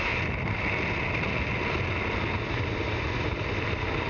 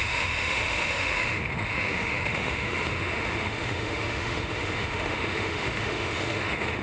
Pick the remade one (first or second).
second